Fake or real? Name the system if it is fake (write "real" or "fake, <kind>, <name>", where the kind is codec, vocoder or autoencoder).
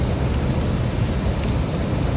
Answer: real